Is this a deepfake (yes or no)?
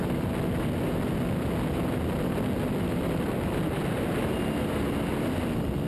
no